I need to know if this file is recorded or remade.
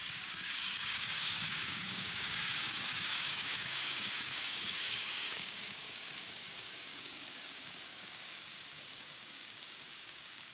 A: remade